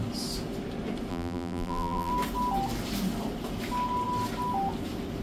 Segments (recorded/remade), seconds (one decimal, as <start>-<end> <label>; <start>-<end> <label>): 0.0-1.1 recorded; 1.1-2.1 remade; 2.1-5.2 recorded